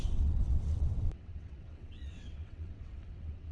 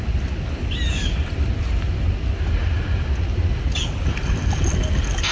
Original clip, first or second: second